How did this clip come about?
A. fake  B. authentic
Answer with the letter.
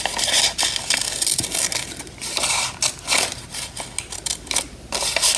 B